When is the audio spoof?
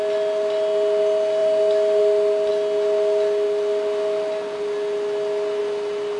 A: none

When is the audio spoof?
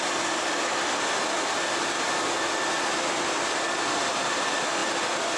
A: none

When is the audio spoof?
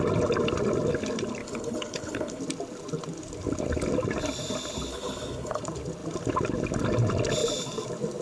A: 1.4-2.4 (codec, HILCodec); 4.9-5.6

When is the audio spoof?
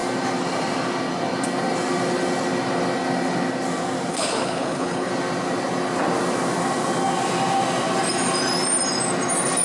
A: 4.1-5.1 (codec, HILCodec)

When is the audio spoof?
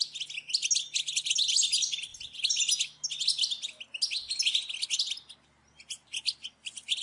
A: none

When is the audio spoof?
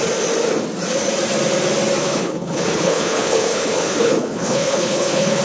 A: 2.0-5.4 (codec, HILCodec)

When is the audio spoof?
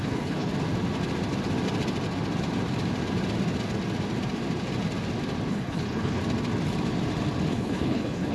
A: 0.0-0.5 (codec, HILCodec); 5.5-6.2; 7.5-8.3